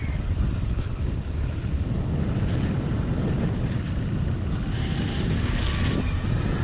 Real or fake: real